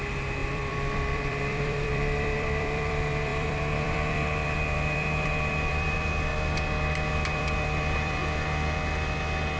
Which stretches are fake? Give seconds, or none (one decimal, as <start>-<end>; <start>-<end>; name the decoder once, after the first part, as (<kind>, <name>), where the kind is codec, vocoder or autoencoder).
0.0-6.3 (vocoder, BigVGAN v2); 7.1-8.2